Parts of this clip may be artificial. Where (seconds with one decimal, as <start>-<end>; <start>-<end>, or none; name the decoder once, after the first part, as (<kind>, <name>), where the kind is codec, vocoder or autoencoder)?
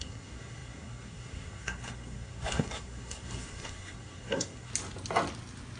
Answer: 0.0-4.7 (codec, SNAC)